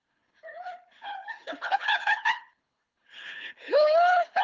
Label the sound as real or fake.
fake